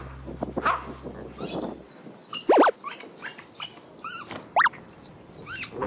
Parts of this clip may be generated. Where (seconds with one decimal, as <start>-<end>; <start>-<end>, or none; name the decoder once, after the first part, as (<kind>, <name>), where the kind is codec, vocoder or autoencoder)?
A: none